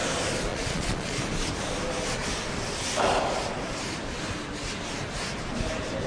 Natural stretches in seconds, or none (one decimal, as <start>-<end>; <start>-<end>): 0.0-0.5; 1.2-6.1